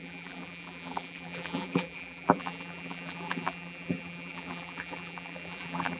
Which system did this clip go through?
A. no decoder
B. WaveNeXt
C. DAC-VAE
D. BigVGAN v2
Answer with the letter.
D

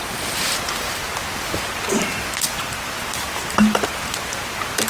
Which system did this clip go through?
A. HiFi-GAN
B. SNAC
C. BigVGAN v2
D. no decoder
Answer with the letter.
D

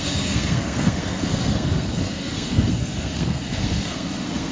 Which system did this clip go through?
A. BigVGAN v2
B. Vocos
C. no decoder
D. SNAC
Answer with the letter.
D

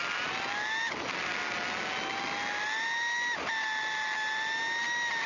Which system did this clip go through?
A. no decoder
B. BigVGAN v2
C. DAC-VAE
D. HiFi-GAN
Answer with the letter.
A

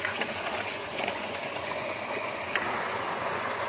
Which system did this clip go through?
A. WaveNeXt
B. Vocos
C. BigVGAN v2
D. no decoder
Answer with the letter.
B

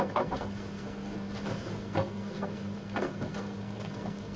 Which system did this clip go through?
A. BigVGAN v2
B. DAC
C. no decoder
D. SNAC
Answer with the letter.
D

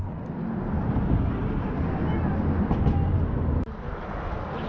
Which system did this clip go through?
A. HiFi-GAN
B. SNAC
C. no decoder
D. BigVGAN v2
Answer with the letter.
C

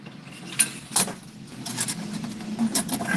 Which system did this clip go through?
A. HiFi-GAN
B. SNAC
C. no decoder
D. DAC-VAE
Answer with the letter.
C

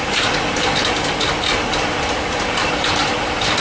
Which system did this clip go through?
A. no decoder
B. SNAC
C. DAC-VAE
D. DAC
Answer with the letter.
A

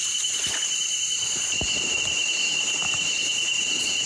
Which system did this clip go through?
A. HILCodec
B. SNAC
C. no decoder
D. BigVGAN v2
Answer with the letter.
D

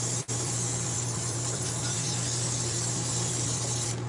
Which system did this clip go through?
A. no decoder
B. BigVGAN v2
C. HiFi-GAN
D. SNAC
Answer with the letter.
B